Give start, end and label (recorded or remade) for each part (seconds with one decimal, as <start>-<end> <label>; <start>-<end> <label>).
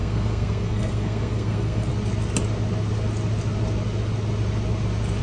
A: 0.0-1.9 remade; 1.9-5.2 recorded